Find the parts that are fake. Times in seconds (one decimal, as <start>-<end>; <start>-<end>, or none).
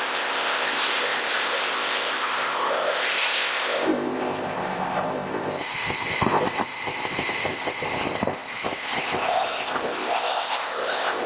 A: 0.0-11.3